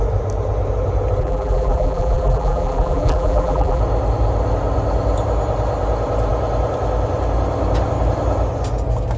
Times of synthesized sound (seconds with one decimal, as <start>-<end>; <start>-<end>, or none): 1.2-3.8